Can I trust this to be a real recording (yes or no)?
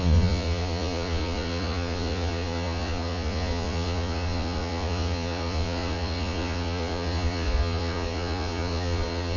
no